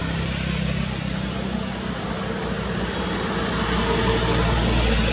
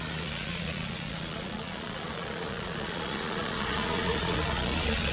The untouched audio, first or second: first